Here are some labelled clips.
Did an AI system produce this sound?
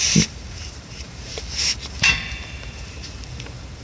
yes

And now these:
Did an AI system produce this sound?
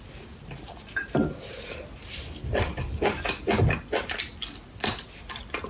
no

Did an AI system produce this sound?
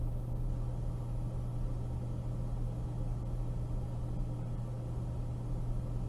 no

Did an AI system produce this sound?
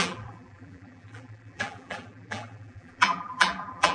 yes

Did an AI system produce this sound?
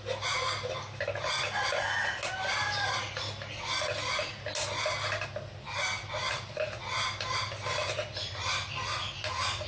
no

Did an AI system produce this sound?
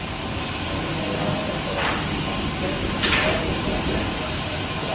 no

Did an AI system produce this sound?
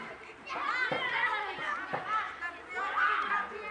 no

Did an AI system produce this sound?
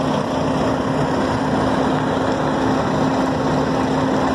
no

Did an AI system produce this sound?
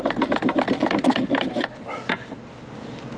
no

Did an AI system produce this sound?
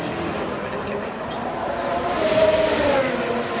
no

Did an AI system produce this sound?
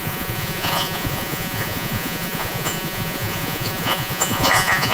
yes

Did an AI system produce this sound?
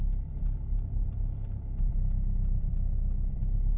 yes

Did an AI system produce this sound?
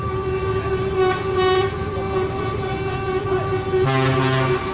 no